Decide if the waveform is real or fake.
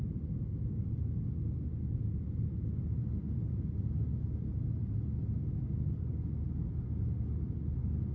real